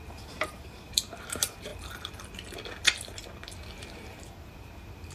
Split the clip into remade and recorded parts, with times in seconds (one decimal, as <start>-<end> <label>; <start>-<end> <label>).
0.0-1.7 remade; 1.7-3.8 recorded; 3.8-5.1 remade